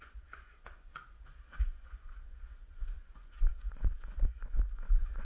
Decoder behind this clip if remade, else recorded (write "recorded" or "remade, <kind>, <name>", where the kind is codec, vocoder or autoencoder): remade, vocoder, Vocos